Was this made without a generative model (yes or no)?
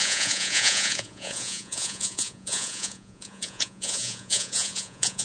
no